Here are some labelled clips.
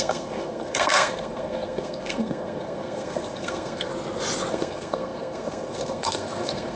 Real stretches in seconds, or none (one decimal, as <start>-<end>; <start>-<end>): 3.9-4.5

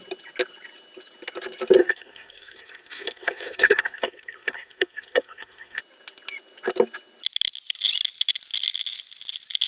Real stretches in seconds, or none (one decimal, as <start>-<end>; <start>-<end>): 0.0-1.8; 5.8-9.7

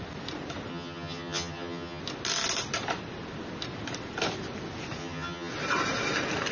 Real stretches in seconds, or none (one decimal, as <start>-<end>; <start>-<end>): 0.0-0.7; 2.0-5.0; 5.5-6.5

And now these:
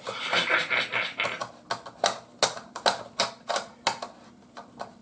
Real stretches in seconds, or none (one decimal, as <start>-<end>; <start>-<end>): 0.0-5.0

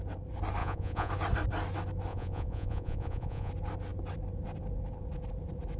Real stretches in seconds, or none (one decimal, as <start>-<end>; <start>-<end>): 0.0-0.6; 1.1-2.1; 3.5-5.8

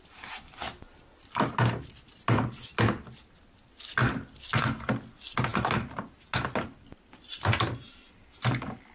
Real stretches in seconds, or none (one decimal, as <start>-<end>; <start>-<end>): 0.0-8.9

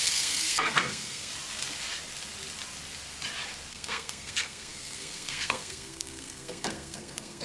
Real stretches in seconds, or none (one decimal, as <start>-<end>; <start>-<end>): 1.3-3.7